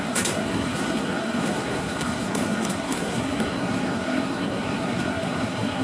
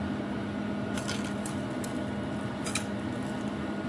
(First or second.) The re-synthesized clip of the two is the first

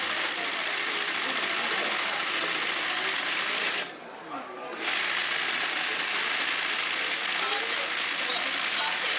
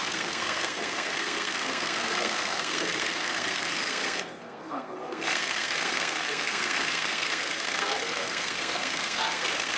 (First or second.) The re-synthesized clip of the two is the second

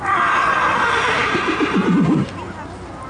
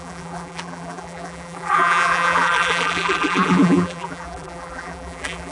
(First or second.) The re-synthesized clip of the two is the second